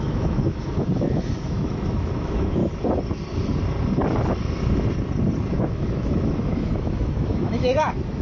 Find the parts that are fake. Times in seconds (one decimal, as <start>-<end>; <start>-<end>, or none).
0.0-2.6; 5.5-8.2